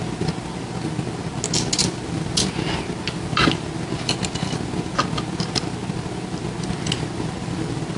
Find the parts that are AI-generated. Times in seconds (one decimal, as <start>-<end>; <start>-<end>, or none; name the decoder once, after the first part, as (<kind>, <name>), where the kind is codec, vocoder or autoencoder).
none

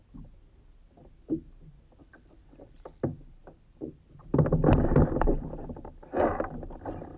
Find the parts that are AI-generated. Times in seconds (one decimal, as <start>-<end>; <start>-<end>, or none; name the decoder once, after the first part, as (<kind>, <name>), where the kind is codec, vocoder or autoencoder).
none